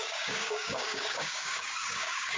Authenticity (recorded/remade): remade